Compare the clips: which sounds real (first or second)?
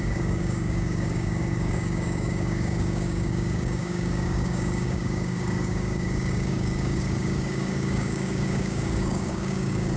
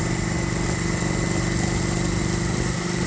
second